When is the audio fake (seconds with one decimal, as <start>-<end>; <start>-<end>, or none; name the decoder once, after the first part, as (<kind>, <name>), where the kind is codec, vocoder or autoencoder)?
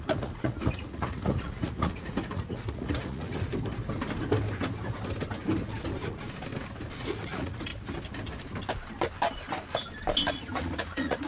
0.0-3.5 (vocoder, Vocos); 7.0-7.7; 10.3-11.3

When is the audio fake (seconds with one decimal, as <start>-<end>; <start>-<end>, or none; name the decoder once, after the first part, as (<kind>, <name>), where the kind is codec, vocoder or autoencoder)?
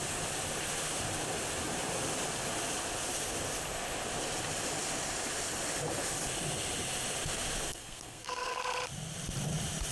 7.7-8.6 (codec, SNAC)